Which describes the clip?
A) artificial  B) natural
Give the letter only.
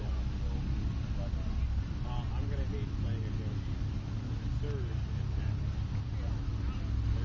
B